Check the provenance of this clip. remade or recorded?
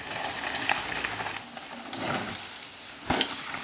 recorded